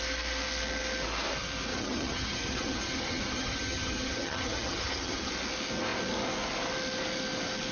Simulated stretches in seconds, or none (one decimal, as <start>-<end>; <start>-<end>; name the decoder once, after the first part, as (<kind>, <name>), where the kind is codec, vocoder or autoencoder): 1.7-5.3 (vocoder, HiFi-GAN)